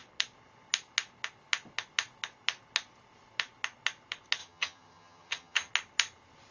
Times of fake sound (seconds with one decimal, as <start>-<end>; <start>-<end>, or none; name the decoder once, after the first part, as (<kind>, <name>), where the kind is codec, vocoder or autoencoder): 4.4-5.7 (vocoder, HiFi-GAN)